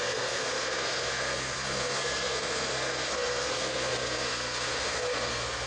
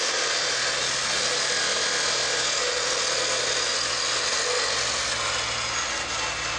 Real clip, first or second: second